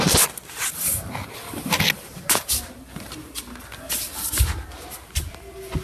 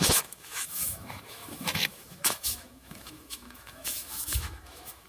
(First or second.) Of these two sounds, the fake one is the second